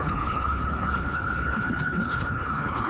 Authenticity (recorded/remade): remade